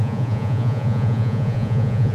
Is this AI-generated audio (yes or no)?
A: yes